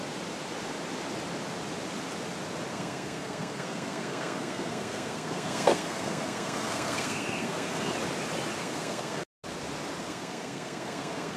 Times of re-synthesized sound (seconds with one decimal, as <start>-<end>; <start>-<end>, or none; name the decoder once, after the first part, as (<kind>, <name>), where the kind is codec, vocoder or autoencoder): 2.7-7.9 (codec, SNAC); 8.6-9.2; 10.0-11.4